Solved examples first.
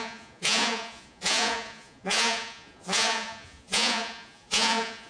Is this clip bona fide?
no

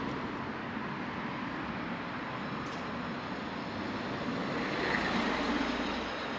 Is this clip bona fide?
yes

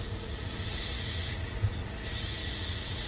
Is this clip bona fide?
no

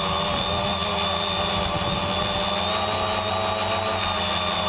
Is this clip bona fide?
yes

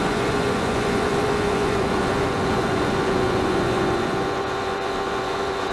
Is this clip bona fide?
no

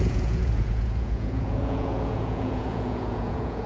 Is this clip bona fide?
no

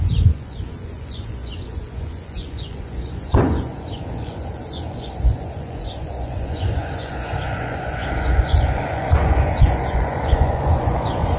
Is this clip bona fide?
no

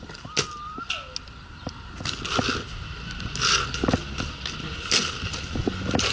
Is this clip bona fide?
yes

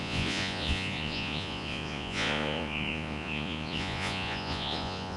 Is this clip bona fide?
no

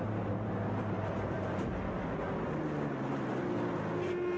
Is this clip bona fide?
yes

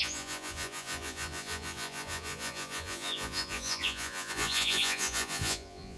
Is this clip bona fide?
no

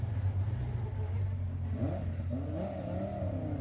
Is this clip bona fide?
yes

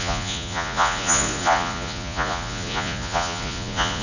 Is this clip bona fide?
no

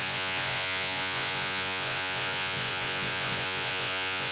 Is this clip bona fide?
no